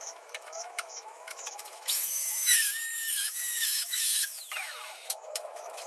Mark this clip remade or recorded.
remade